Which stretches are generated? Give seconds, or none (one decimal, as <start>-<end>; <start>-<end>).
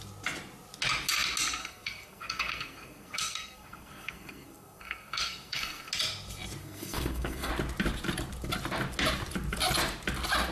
1.6-5.9; 6.6-7.5